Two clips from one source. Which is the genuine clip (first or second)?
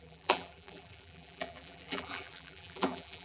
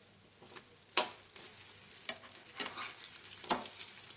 second